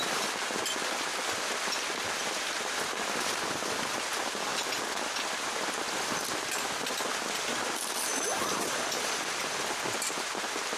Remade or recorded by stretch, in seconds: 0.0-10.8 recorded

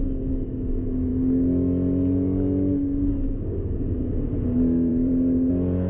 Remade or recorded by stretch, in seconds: 0.0-4.9 recorded; 4.9-5.5 remade; 5.5-5.9 recorded